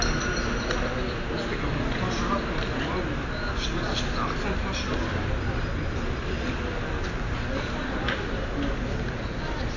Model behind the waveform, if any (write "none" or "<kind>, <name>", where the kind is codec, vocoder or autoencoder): none